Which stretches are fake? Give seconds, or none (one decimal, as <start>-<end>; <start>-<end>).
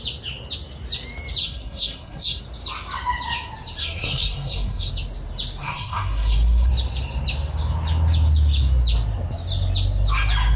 1.4-2.4; 3.8-4.9; 5.6-6.7